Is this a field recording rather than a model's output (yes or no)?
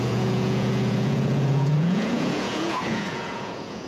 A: no